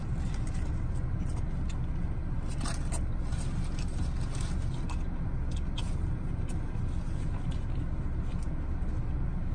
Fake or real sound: real